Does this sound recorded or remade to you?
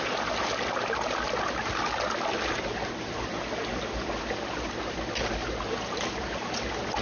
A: recorded